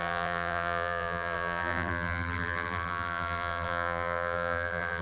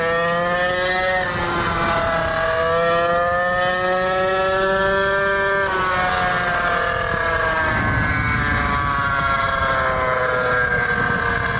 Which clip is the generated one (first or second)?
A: first